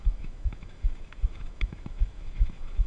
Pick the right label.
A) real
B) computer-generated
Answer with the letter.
B